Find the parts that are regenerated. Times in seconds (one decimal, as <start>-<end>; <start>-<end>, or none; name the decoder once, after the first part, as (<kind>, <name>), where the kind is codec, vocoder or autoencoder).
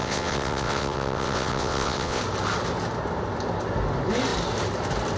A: 0.0-2.2 (vocoder, WaveNeXt)